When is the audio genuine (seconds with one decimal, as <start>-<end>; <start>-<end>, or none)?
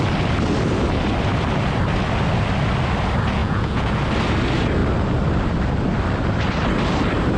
0.0-3.4; 3.9-7.4